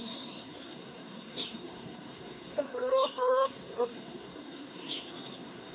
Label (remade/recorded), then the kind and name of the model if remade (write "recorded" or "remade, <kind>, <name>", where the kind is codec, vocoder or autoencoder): remade, codec, SNAC